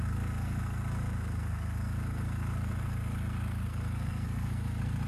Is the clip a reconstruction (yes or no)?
yes